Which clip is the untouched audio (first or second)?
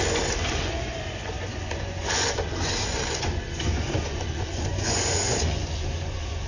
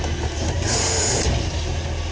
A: second